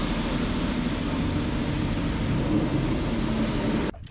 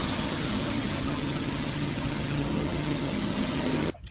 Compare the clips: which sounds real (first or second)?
first